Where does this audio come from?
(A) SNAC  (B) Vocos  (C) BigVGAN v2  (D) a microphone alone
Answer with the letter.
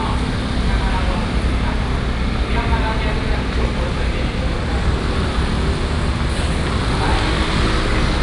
D